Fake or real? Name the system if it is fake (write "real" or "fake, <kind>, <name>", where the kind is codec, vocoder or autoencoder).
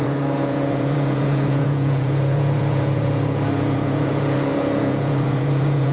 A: fake, vocoder, Vocos